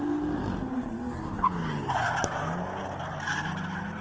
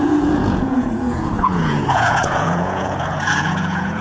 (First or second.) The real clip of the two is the first